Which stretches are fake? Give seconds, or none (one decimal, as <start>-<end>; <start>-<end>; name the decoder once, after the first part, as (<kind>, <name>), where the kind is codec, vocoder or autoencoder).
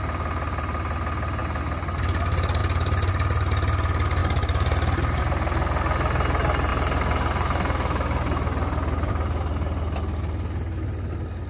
1.4-2.0 (vocoder, BigVGAN v2); 2.6-3.1; 4.2-5.2; 6.7-9.1